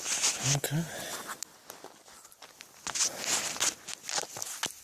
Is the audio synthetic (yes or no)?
no